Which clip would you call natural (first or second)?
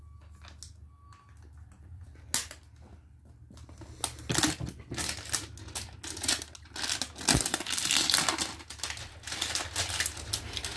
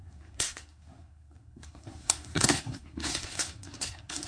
first